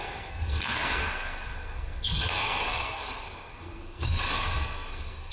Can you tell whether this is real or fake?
fake